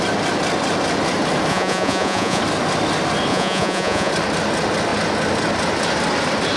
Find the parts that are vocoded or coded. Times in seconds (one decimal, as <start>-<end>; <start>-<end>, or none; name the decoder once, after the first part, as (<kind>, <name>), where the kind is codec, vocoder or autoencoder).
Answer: 1.5-2.4 (vocoder, Vocos); 3.3-4.1